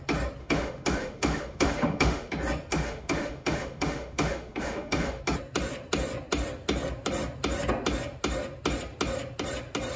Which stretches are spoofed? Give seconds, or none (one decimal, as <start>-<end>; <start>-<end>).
0.4-2.3; 2.7-5.2